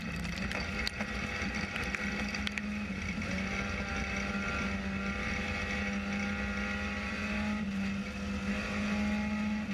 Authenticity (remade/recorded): recorded